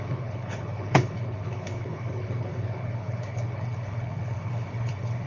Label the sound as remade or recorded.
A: remade